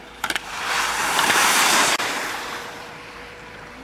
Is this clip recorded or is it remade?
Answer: remade